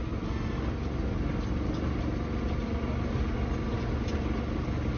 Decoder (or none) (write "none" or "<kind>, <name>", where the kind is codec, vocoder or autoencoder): none